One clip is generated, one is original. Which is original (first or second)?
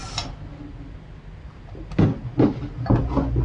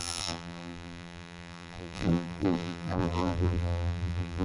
first